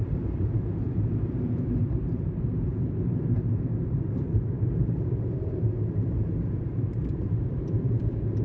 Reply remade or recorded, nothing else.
remade